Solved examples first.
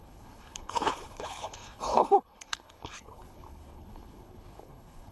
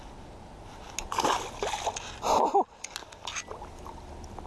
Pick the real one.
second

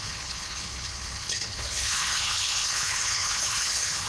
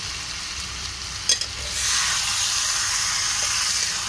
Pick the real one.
second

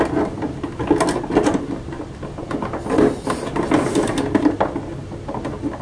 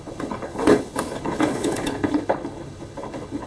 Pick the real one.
first